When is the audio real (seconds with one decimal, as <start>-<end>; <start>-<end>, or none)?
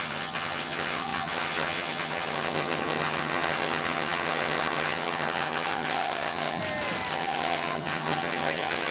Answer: 6.6-7.1